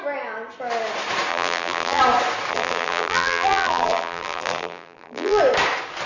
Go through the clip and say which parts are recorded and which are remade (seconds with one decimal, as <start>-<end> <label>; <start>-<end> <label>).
0.0-1.3 recorded; 1.3-2.0 remade; 2.0-2.5 recorded; 2.5-5.4 remade; 5.4-6.1 recorded